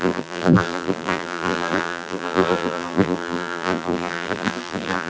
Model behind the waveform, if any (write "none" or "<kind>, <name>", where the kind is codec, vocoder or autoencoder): vocoder, BigVGAN v2